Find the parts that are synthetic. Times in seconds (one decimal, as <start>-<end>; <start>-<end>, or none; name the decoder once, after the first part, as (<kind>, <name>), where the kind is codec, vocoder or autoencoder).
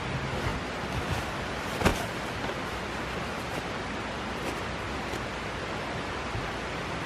none